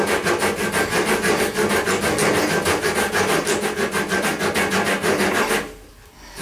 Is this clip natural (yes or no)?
yes